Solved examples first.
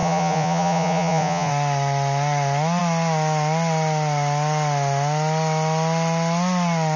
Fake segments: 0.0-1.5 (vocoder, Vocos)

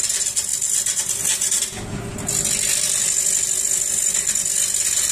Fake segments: none

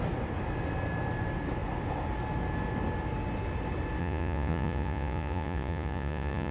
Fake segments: 4.0-6.5 (vocoder, Vocos)